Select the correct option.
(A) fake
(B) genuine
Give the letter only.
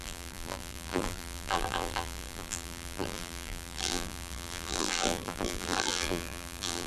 A